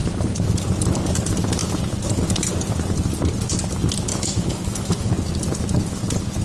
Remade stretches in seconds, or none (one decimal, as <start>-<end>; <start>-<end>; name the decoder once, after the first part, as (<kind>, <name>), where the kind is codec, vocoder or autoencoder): 4.1-5.1 (autoencoder, DAC-VAE)